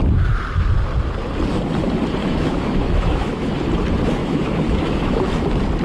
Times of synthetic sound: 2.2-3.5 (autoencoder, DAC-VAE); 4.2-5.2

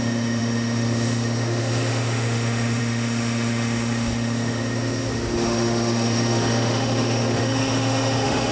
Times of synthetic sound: 0.0-8.5 (autoencoder, DAC-VAE)